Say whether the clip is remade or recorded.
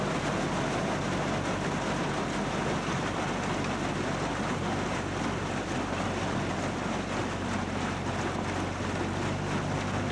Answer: recorded